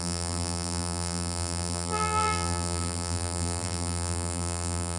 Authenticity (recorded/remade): remade